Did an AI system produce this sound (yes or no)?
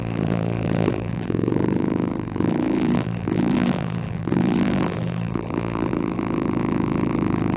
yes